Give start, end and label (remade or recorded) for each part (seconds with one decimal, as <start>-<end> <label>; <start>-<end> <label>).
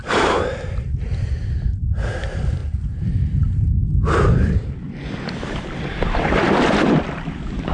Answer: 0.0-1.4 remade; 1.4-2.0 recorded; 2.0-2.6 remade; 2.6-5.6 recorded; 5.6-7.7 remade